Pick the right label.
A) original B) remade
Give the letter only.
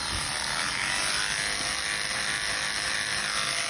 A